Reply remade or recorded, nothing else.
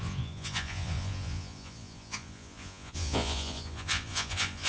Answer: remade